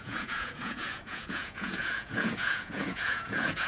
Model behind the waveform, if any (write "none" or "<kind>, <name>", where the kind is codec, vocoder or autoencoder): vocoder, Vocos